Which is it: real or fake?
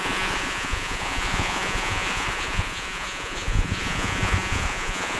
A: fake